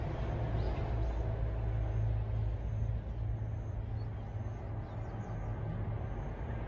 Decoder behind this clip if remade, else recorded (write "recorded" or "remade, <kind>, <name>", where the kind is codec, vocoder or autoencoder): recorded